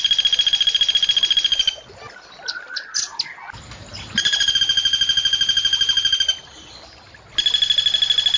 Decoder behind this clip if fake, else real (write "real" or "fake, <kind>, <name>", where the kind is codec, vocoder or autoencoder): real